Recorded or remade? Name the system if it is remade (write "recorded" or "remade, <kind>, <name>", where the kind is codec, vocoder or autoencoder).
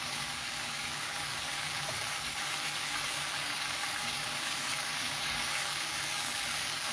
remade, codec, DAC